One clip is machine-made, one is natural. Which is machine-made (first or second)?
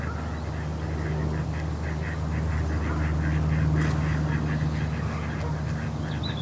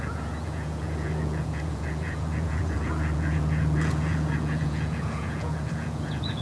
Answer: second